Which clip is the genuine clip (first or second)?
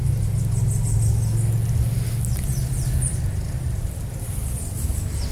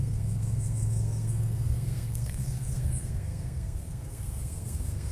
first